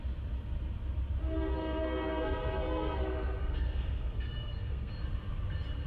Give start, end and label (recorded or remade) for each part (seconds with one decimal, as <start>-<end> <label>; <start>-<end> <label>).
0.0-1.6 recorded; 1.6-4.9 remade; 4.9-5.9 recorded